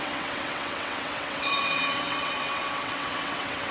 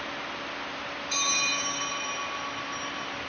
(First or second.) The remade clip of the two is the first